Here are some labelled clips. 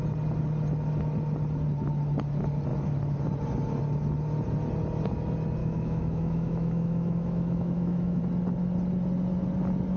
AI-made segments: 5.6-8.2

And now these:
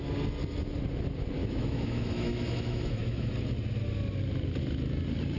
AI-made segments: 1.4-3.3

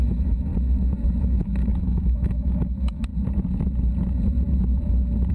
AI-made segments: 0.0-0.5; 1.2-3.1

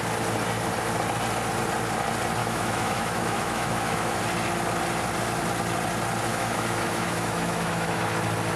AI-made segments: 2.4-4.2; 6.3-8.0

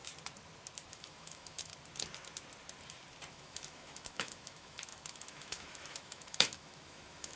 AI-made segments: 0.9-1.7; 3.3-7.3

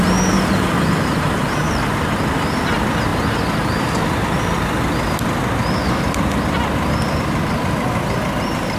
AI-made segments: none

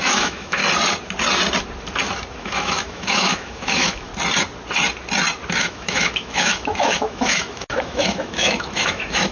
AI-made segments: 0.0-0.6; 2.4-4.1; 5.6-9.3

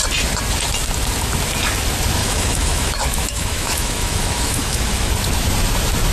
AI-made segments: 2.2-5.1